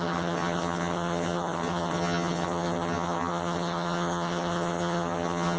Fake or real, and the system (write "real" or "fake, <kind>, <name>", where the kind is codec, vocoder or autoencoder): fake, vocoder, HiFi-GAN